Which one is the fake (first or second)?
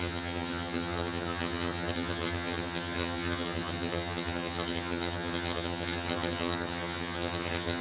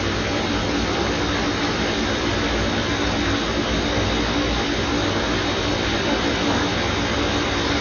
first